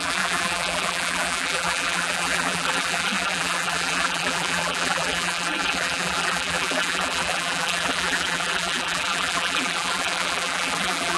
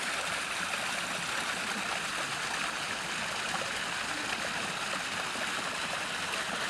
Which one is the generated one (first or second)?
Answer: first